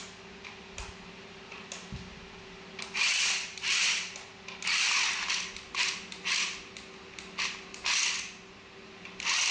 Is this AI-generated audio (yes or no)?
no